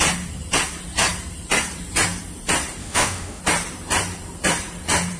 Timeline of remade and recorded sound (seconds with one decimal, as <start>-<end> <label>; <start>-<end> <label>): 0.0-2.8 recorded; 2.8-3.4 remade; 3.4-5.2 recorded